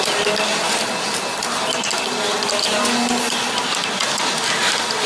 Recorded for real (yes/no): yes